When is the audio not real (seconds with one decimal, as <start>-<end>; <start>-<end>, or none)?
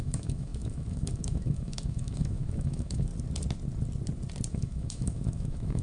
0.0-3.1; 4.5-5.8